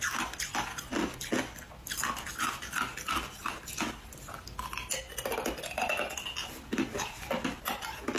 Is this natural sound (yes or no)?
yes